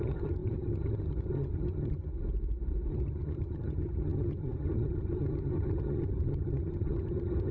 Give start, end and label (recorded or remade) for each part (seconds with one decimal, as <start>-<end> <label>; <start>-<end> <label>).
0.0-2.1 remade; 2.1-2.9 recorded; 2.9-7.5 remade